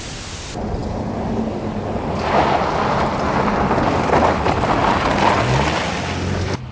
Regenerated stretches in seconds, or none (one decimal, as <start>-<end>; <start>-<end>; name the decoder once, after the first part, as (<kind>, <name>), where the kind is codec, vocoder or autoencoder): none